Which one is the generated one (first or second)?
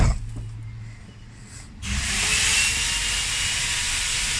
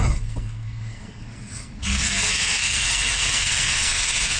second